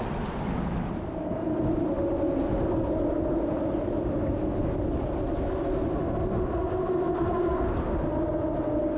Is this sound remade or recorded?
recorded